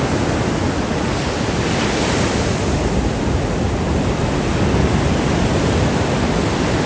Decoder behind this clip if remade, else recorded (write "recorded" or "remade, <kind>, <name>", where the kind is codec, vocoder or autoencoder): recorded